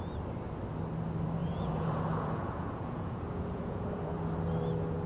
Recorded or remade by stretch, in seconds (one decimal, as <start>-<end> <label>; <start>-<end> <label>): 0.0-1.4 recorded; 1.4-3.9 remade; 3.9-5.1 recorded